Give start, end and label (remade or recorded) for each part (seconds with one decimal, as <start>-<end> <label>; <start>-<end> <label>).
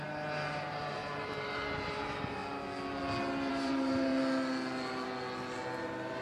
0.0-2.4 remade; 2.4-3.5 recorded; 3.5-4.1 remade; 4.1-5.8 recorded; 5.8-6.2 remade